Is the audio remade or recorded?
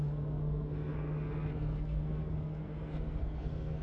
remade